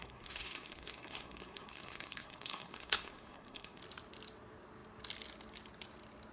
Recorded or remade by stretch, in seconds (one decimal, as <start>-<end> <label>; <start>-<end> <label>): 0.0-3.8 remade; 3.8-6.3 recorded